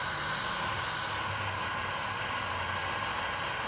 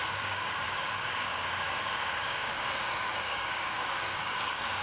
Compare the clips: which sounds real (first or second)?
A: first